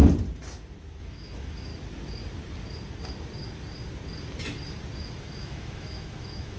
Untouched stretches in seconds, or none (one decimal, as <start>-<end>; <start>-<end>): 0.0-1.0; 1.7-5.2